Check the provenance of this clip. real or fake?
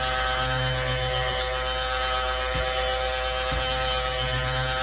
real